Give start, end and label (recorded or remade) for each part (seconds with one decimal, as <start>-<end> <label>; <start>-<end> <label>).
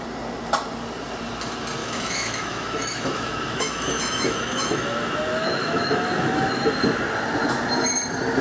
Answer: 0.0-1.8 recorded; 1.8-6.7 remade; 6.7-8.4 recorded